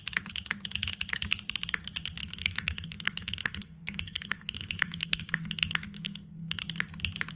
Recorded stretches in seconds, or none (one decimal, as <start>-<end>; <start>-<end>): 0.0-2.2; 6.6-7.4